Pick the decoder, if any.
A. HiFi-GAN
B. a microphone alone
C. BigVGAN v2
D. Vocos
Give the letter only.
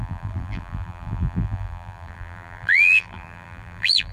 C